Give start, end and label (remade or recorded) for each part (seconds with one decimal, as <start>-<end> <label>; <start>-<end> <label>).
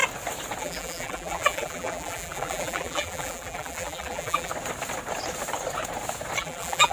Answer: 0.0-0.6 recorded; 0.6-4.5 remade; 4.5-6.4 recorded; 6.4-6.9 remade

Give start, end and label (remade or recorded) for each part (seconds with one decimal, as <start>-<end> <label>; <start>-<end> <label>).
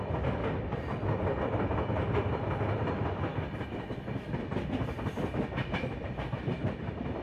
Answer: 0.0-0.4 remade; 0.4-1.4 recorded; 1.4-3.3 remade; 3.3-5.4 recorded; 5.4-7.2 remade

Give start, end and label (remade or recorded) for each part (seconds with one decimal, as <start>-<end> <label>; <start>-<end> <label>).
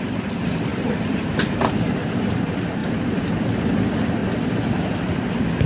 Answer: 0.0-0.7 recorded; 0.7-2.2 remade; 2.2-2.8 recorded; 2.8-3.4 remade; 3.4-5.7 recorded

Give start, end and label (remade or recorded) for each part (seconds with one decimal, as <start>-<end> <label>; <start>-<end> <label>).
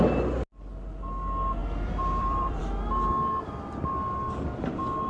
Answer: 0.0-1.6 recorded; 1.6-2.6 remade; 2.6-5.1 recorded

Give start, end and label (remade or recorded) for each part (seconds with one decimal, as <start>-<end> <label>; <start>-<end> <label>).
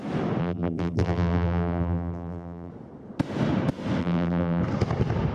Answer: 0.0-0.4 recorded; 0.4-2.7 remade; 2.7-4.0 recorded; 4.0-4.6 remade; 4.6-5.3 recorded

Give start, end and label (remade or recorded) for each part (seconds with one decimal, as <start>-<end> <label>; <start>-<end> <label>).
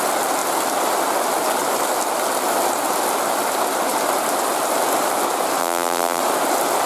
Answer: 0.0-5.6 recorded; 5.6-6.2 remade; 6.2-6.9 recorded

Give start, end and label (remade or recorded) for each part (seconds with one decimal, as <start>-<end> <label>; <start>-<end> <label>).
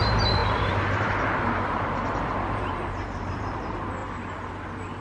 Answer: 0.0-4.0 remade; 4.0-5.0 recorded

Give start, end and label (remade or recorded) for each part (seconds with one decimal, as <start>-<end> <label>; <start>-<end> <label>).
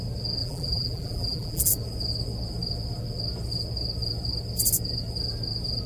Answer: 0.0-0.4 recorded; 0.4-1.7 remade; 1.7-5.9 recorded